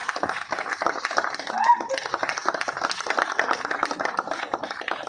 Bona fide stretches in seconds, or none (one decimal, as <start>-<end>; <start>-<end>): 0.0-5.1